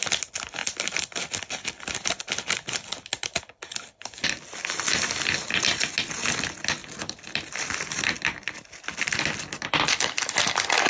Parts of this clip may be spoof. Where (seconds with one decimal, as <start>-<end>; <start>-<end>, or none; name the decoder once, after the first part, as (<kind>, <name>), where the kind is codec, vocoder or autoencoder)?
0.6-2.2 (vocoder, BigVGAN v2); 6.8-9.1